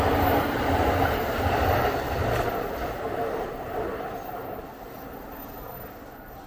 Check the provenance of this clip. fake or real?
real